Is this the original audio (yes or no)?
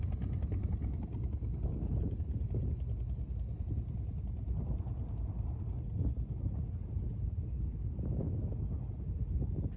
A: yes